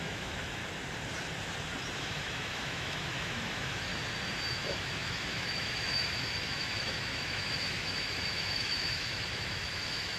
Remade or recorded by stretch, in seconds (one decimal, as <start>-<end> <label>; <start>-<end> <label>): 0.0-0.6 remade; 0.6-2.0 recorded; 2.0-3.9 remade; 3.9-4.5 recorded; 4.5-10.2 remade

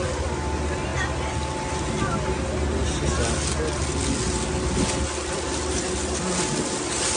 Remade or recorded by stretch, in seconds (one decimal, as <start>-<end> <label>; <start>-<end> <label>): 0.0-7.2 recorded

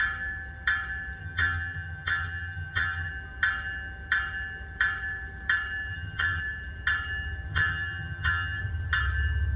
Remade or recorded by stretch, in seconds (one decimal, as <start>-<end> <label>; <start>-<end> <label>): 0.0-1.2 recorded; 1.2-3.1 remade; 3.1-5.9 recorded; 5.9-6.4 remade; 6.4-7.5 recorded; 7.5-8.6 remade; 8.6-9.6 recorded

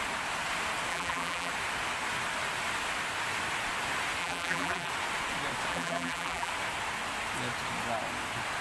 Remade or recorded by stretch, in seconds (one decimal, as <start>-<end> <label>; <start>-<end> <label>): 0.0-0.9 recorded; 0.9-1.5 remade; 1.5-4.2 recorded; 4.2-4.9 remade; 4.9-5.7 recorded; 5.7-6.5 remade; 6.5-8.6 recorded